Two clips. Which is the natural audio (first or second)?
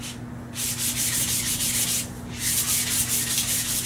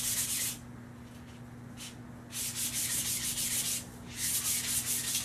second